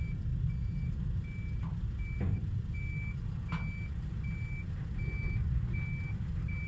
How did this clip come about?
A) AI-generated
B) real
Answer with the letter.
B